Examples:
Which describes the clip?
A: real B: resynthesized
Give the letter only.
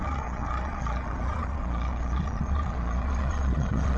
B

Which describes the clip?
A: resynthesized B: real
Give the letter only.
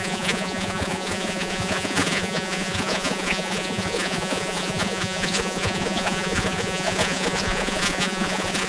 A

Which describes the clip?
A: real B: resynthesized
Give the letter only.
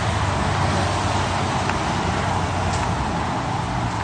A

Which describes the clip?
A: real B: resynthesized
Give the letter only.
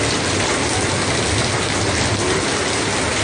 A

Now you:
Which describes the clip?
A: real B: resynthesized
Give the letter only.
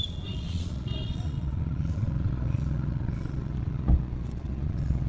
B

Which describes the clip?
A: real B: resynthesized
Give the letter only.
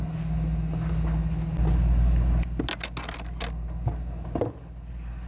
A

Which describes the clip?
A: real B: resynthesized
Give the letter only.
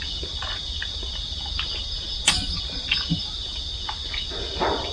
A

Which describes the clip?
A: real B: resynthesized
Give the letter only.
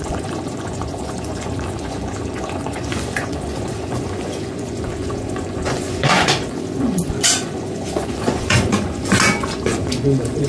B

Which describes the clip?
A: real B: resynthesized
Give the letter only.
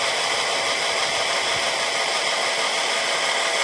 A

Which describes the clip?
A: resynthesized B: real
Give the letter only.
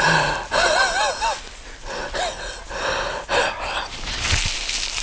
B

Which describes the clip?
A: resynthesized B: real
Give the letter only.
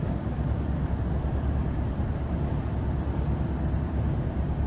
B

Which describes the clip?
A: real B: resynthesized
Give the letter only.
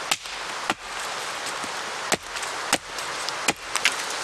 A